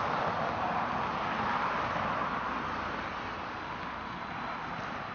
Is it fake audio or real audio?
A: real